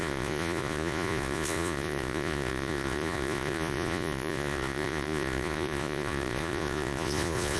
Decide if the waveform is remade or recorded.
remade